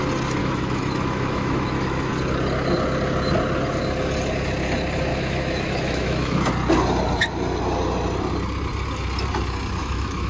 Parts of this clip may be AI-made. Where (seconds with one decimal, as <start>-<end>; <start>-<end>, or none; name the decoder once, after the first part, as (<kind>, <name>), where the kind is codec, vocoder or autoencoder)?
0.4-2.1 (autoencoder, DAC-VAE); 5.1-6.4; 9.8-10.3